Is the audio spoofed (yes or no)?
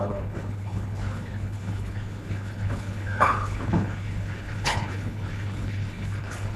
yes